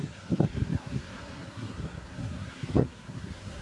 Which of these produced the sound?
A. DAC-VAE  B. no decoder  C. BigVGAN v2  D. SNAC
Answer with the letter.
D